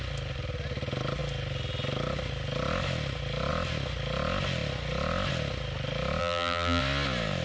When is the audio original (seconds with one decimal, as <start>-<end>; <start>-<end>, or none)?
0.0-6.2; 6.8-7.4